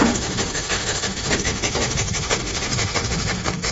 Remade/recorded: remade